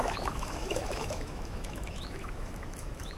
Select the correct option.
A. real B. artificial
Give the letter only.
B